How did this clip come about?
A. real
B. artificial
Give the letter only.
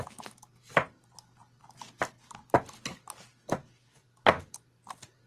A